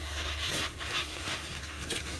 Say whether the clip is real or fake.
fake